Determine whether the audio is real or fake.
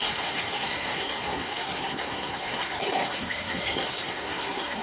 fake